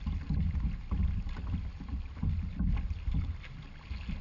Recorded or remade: recorded